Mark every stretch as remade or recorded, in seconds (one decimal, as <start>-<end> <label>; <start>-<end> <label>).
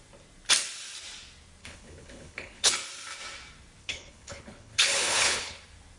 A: 0.0-1.6 recorded; 1.6-2.7 remade; 2.7-3.8 recorded; 3.8-5.6 remade; 5.6-6.0 recorded